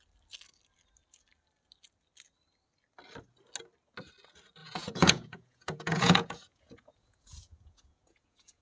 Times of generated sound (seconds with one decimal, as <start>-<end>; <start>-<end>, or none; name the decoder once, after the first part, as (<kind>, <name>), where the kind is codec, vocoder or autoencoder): 4.6-8.6 (vocoder, Vocos)